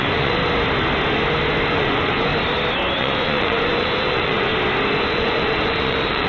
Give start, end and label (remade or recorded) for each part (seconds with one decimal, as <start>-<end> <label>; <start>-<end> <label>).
0.0-0.4 remade; 0.4-1.7 recorded; 1.7-2.3 remade; 2.3-3.0 recorded; 3.0-4.5 remade; 4.5-5.0 recorded; 5.0-6.3 remade